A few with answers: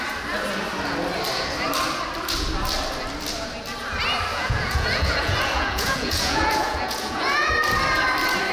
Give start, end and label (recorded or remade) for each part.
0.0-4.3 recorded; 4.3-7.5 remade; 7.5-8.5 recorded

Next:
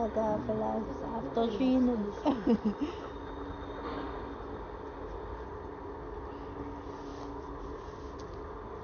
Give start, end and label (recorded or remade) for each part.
0.0-8.8 recorded

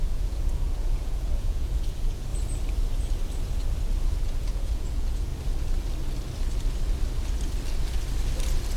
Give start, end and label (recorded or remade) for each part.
0.0-2.3 remade; 2.3-4.2 recorded; 4.2-5.3 remade; 5.3-8.8 recorded

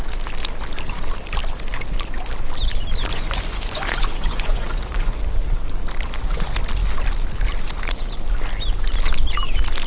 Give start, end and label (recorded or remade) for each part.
0.0-3.1 recorded; 3.1-5.2 remade; 5.2-9.9 recorded

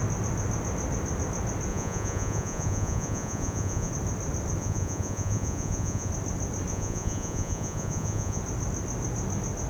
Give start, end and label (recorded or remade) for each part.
0.0-1.7 recorded; 1.7-3.9 remade; 3.9-4.6 recorded; 4.6-6.1 remade; 6.1-6.7 recorded; 6.7-8.4 remade; 8.4-9.7 recorded

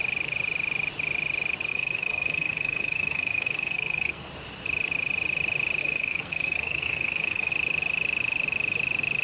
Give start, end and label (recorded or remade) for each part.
0.0-1.7 recorded; 1.7-4.3 remade; 4.3-5.8 recorded; 5.8-7.5 remade; 7.5-9.2 recorded

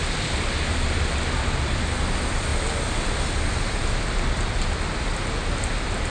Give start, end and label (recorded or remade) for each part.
0.0-6.1 recorded

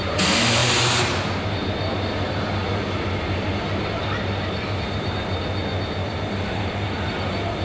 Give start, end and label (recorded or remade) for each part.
0.0-5.4 remade; 5.4-6.3 recorded; 6.3-7.6 remade